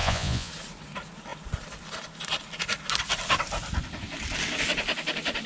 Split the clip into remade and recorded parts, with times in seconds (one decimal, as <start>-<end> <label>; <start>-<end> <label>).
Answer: 0.0-0.5 remade; 0.5-5.5 recorded